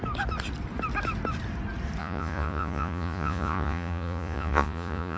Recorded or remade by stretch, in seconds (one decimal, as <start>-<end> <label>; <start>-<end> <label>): 0.0-2.0 recorded; 2.0-5.2 remade